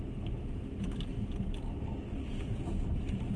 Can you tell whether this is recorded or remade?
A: recorded